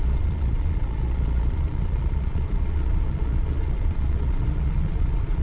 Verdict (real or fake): fake